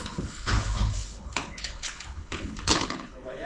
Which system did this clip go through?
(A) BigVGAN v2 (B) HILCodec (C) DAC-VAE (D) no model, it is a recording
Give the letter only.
B